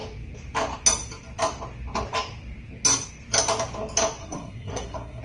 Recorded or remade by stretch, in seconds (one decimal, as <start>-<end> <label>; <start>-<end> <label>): 0.0-4.2 recorded; 4.2-5.2 remade